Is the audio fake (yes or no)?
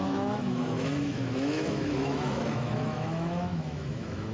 yes